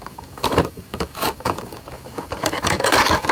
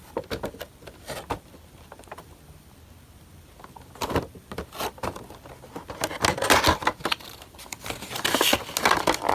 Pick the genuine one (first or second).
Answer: second